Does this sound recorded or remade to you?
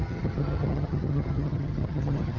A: remade